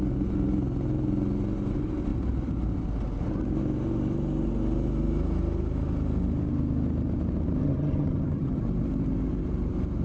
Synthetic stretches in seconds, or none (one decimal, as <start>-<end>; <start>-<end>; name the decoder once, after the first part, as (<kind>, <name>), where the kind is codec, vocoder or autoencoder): 7.6-8.6 (vocoder, HiFi-GAN)